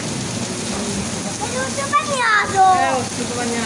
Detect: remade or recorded recorded